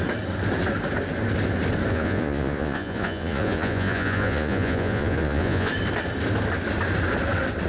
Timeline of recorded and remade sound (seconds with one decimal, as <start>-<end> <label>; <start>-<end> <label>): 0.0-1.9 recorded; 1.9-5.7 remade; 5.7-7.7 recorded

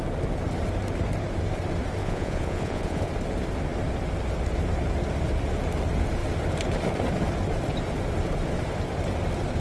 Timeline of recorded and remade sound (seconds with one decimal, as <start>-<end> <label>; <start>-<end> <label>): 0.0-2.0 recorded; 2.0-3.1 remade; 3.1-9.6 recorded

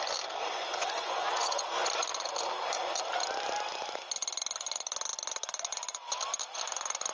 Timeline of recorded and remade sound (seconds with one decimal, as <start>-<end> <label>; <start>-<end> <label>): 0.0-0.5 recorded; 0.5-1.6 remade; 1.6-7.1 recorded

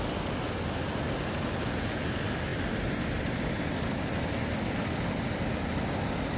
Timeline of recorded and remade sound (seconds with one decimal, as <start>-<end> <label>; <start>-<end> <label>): 0.0-6.4 recorded